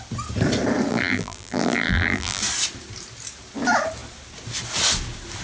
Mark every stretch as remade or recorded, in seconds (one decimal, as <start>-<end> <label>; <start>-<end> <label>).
0.0-0.9 recorded; 0.9-2.4 remade; 2.4-5.4 recorded